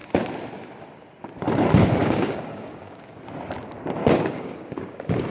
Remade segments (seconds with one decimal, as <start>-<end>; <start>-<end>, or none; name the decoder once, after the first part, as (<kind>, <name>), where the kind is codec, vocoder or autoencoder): 2.0-3.2 (codec, DAC); 4.0-5.3